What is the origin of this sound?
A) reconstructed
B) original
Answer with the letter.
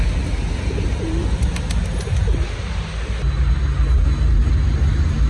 B